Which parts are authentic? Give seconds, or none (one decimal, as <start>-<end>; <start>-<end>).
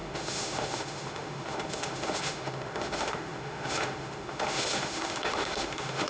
none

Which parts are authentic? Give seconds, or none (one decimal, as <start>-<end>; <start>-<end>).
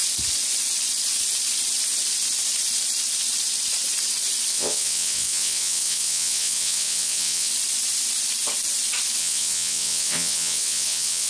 0.0-4.5; 7.5-9.2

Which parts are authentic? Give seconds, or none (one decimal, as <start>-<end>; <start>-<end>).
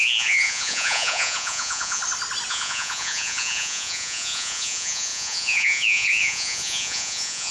2.0-2.5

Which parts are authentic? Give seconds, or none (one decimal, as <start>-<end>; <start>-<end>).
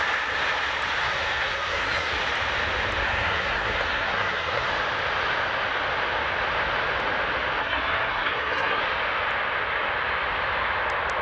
0.0-1.0; 2.1-3.0; 4.7-7.6; 8.8-11.2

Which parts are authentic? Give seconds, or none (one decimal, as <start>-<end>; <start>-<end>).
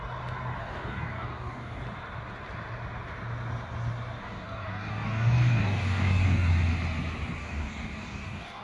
0.0-0.6; 1.8-4.2; 6.5-7.4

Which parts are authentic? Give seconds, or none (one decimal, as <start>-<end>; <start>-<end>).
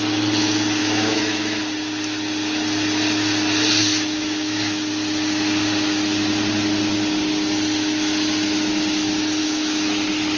0.0-0.8; 1.6-3.8; 4.9-9.4; 9.9-10.4